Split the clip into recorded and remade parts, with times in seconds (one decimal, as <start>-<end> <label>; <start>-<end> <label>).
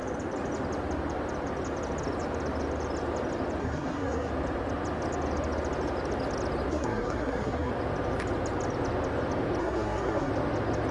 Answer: 0.0-3.6 recorded; 3.6-4.3 remade; 4.3-6.7 recorded; 6.7-7.7 remade; 7.7-9.6 recorded; 9.6-10.3 remade; 10.3-10.9 recorded